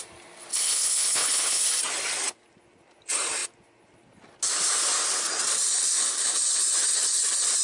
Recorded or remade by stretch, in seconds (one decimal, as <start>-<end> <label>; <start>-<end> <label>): 0.0-0.5 recorded; 0.5-1.6 remade; 1.6-7.6 recorded